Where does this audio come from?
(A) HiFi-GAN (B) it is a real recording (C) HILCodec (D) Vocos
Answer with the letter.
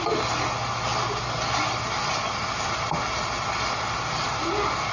B